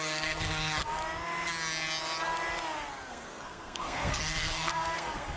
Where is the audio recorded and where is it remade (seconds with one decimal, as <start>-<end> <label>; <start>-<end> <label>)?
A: 0.0-1.0 remade; 1.0-3.1 recorded; 3.1-5.4 remade